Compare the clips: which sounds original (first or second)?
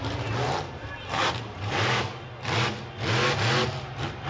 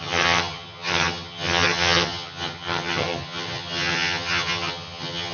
first